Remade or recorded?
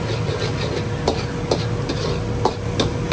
recorded